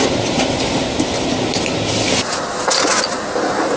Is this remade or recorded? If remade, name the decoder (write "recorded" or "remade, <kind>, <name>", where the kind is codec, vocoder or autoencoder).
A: recorded